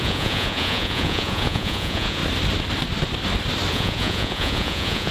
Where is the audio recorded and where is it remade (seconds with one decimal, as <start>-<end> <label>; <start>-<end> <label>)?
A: 0.0-2.2 remade; 2.2-3.7 recorded; 3.7-5.1 remade